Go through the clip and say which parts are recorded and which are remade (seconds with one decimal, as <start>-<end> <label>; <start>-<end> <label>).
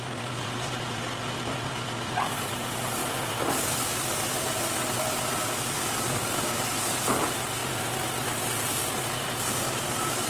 0.0-3.0 remade; 3.0-3.6 recorded; 3.6-7.6 remade; 7.6-9.1 recorded; 9.1-10.3 remade